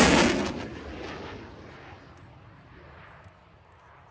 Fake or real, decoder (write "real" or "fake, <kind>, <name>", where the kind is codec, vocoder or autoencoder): real